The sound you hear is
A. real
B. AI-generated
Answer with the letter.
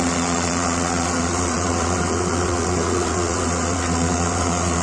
B